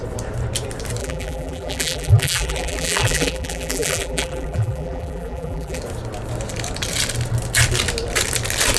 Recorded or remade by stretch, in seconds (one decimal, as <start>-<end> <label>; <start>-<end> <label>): 0.0-1.0 recorded; 1.0-5.8 remade; 5.8-8.8 recorded